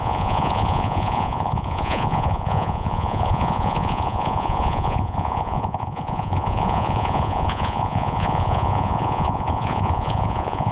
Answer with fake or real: fake